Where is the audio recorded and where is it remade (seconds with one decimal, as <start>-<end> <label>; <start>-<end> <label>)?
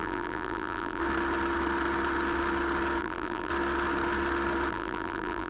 0.0-1.0 remade; 1.0-3.0 recorded; 3.0-3.5 remade; 3.5-4.7 recorded; 4.7-5.5 remade